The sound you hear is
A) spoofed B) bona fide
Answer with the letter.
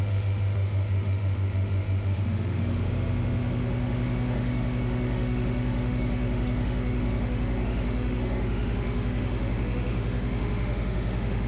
A